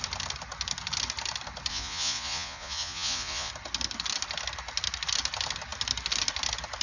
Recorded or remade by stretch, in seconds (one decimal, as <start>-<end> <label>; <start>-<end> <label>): 0.0-1.7 recorded; 1.7-3.5 remade; 3.5-6.8 recorded